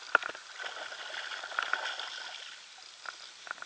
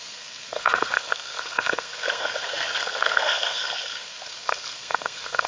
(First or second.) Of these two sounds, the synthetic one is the second